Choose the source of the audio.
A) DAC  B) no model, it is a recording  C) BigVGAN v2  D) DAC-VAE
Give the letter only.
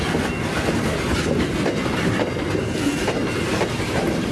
B